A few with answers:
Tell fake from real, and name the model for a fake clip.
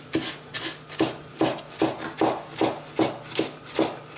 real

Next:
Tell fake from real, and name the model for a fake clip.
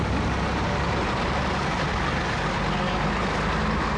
real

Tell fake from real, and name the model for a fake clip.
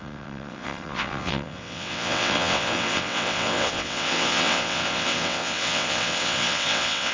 fake, vocoder, WaveNeXt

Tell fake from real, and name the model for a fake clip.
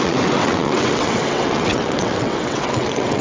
fake, vocoder, WaveNeXt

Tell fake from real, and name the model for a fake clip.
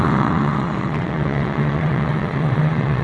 fake, vocoder, WaveNeXt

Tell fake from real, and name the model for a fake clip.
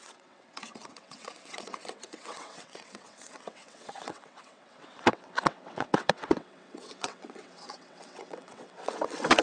fake, vocoder, WaveNeXt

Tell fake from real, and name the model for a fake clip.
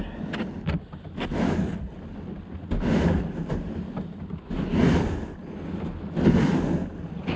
real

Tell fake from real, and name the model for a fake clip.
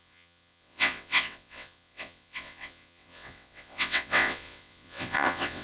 fake, vocoder, WaveNeXt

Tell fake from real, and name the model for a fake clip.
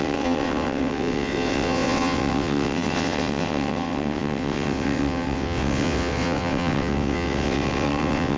fake, vocoder, WaveNeXt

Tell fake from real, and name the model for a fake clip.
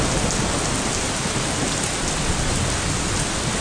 real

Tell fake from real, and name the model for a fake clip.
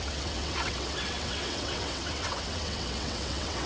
fake, vocoder, WaveNeXt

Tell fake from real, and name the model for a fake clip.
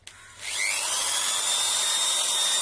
real